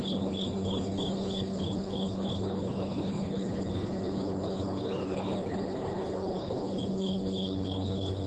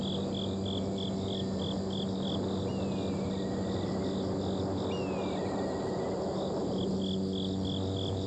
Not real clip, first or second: first